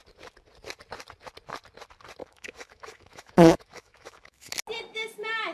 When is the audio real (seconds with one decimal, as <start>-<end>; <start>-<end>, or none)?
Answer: 0.0-2.2; 4.5-5.5